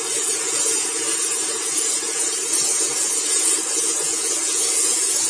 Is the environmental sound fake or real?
fake